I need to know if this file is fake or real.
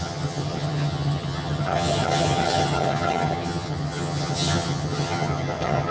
fake